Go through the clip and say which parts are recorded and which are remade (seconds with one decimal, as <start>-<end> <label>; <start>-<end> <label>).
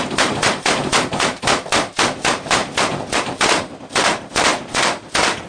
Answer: 0.0-2.6 remade; 2.6-3.2 recorded; 3.2-4.5 remade; 4.5-5.5 recorded